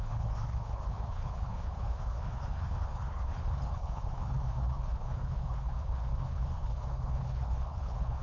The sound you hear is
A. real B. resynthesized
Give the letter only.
B